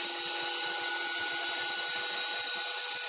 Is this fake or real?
real